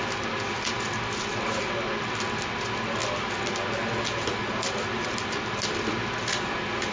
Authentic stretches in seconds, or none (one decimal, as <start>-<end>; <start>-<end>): 0.0-6.9